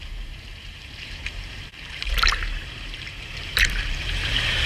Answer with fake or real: fake